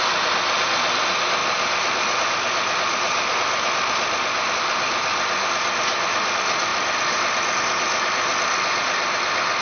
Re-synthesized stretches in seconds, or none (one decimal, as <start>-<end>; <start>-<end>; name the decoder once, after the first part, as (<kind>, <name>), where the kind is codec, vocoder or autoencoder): 0.0-1.4 (vocoder, BigVGAN v2); 4.5-5.1; 6.3-9.6